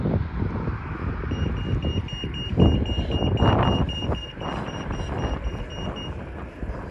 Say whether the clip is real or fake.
real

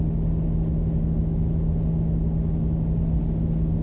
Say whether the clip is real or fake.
real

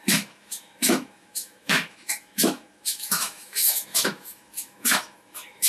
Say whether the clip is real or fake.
fake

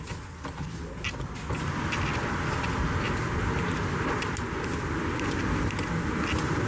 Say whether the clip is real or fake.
real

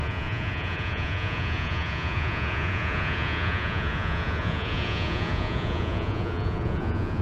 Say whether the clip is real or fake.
fake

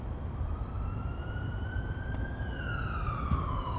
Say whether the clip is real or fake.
real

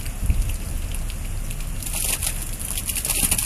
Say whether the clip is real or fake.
real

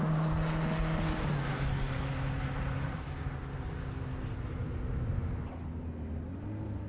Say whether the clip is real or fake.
real